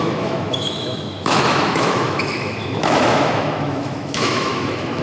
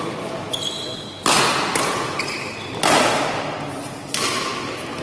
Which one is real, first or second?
second